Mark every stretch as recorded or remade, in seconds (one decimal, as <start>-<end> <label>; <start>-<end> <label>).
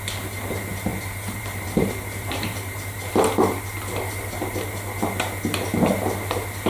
0.0-0.9 recorded; 0.9-3.1 remade; 3.1-6.7 recorded